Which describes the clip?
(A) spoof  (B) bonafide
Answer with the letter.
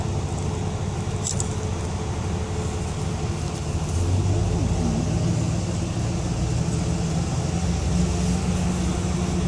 B